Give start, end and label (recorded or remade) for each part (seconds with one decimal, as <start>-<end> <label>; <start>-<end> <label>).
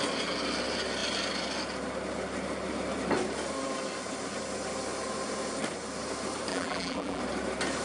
0.0-6.5 recorded; 6.5-7.2 remade; 7.2-7.8 recorded